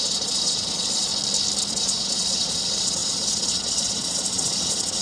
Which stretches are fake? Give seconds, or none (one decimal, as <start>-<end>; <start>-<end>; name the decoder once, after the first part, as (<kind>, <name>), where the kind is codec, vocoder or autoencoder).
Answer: 0.0-1.1 (vocoder, Vocos); 1.7-5.0